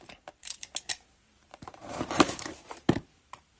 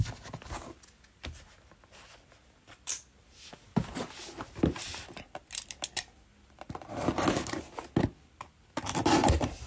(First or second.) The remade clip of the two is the first